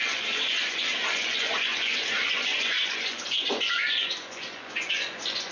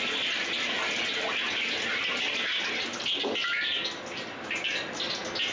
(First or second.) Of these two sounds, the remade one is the first